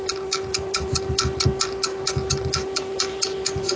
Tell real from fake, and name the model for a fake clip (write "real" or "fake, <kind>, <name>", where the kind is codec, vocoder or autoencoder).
real